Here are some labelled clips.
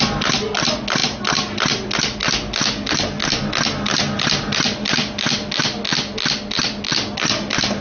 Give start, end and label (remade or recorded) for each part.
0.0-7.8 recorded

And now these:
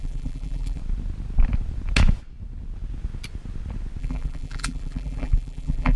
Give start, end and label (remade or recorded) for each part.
0.0-0.8 remade; 0.8-4.0 recorded; 4.0-6.0 remade

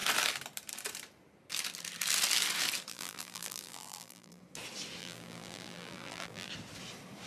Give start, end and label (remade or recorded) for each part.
0.0-2.9 recorded; 2.9-4.4 remade; 4.4-5.0 recorded; 5.0-6.5 remade; 6.5-7.3 recorded

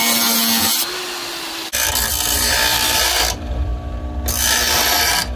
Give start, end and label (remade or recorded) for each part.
0.0-1.3 recorded; 1.3-3.7 remade; 3.7-5.3 recorded

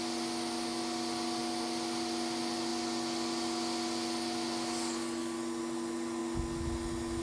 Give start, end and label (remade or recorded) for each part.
0.0-7.2 recorded

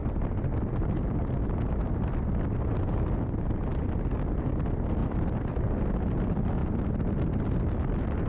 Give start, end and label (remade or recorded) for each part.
0.0-1.2 remade; 1.2-3.7 recorded; 3.7-4.5 remade; 4.5-5.0 recorded; 5.0-5.8 remade; 5.8-6.6 recorded; 6.6-7.2 remade; 7.2-8.3 recorded